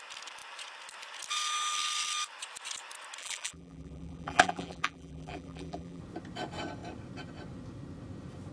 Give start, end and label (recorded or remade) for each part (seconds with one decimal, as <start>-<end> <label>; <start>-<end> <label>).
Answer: 0.0-3.2 recorded; 3.2-6.0 remade; 6.0-8.5 recorded